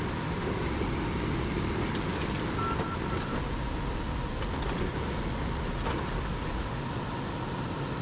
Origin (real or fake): real